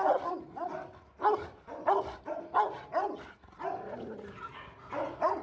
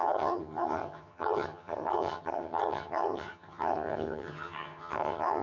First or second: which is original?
first